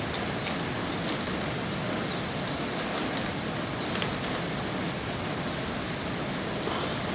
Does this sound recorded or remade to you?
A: recorded